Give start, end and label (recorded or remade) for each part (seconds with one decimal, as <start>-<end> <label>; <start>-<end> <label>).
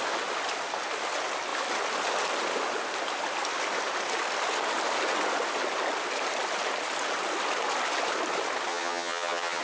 0.0-8.7 recorded; 8.7-9.6 remade